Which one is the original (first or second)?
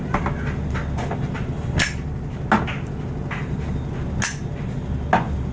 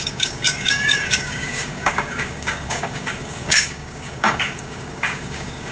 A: first